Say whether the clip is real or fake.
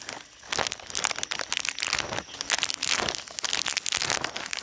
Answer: real